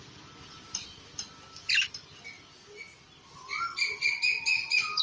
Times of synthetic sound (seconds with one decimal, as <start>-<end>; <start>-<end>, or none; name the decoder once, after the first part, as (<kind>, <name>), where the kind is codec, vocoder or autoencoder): none